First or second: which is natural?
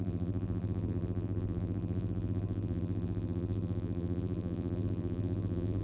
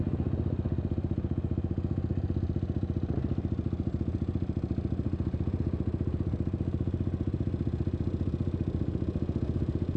second